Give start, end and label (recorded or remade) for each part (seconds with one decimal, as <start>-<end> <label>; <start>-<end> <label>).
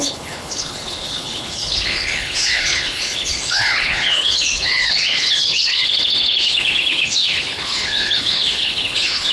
0.0-9.3 remade